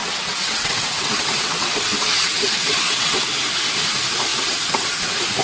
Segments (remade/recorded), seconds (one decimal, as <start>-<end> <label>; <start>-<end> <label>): 0.0-3.2 remade; 3.2-4.3 recorded; 4.3-5.0 remade; 5.0-5.4 recorded